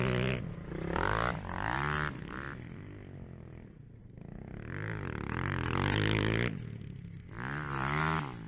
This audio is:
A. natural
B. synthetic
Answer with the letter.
A